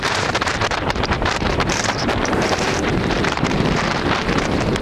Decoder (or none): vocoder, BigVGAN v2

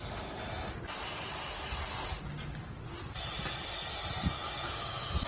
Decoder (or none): none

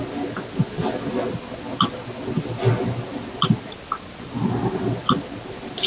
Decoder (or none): none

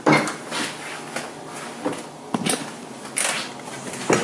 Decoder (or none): none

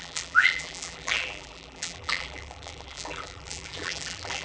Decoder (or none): vocoder, BigVGAN v2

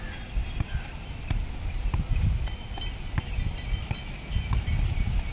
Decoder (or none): none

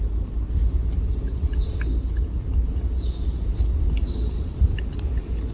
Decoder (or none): none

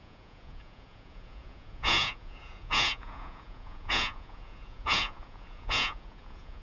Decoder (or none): vocoder, Vocos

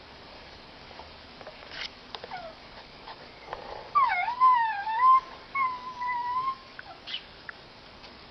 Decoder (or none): codec, DAC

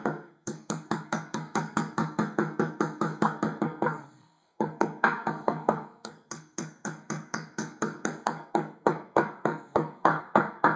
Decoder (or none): codec, SNAC